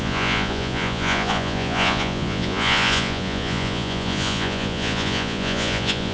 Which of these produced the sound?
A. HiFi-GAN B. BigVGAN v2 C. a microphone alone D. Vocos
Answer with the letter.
D